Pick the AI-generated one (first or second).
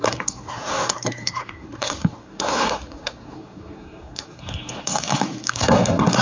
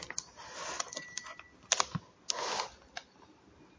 first